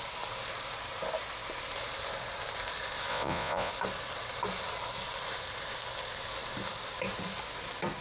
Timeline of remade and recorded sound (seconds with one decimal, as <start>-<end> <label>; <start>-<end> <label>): 0.0-3.1 recorded; 3.1-3.7 remade; 3.7-8.0 recorded